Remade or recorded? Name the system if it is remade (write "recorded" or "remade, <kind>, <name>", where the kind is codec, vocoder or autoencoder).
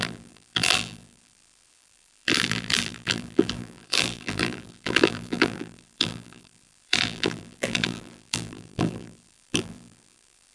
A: remade, vocoder, BigVGAN v2